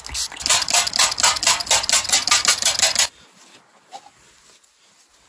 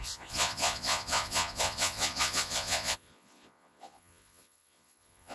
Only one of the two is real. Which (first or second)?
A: first